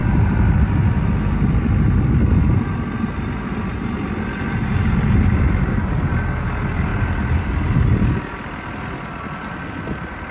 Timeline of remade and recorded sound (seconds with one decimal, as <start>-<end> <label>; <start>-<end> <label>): 0.0-10.3 recorded